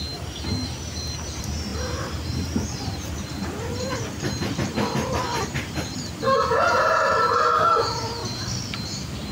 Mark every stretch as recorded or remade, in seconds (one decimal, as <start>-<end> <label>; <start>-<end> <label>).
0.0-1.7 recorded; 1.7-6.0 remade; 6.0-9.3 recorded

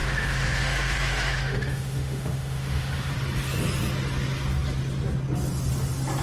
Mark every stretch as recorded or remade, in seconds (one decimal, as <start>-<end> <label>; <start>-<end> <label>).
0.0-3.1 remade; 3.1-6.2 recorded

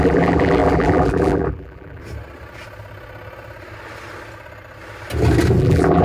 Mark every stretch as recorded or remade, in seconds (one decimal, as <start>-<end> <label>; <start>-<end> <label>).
0.0-2.0 remade; 2.0-5.6 recorded; 5.6-6.0 remade

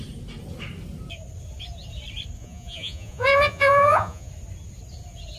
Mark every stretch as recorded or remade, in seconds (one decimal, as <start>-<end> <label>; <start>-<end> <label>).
0.0-2.4 recorded; 2.4-4.3 remade; 4.3-5.4 recorded

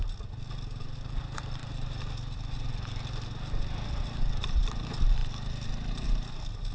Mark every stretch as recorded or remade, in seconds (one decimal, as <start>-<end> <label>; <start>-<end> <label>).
0.0-6.7 recorded